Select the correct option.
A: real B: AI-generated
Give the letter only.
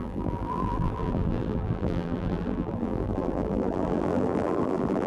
B